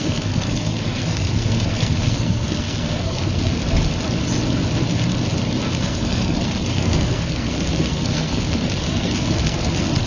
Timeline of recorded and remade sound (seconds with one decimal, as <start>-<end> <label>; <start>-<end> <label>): 0.0-3.6 remade; 3.6-5.8 recorded; 5.8-10.1 remade